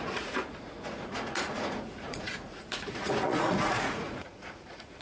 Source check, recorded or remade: remade